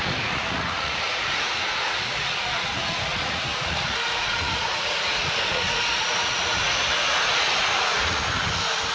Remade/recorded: remade